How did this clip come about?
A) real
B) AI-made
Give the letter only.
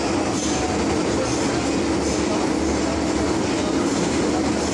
A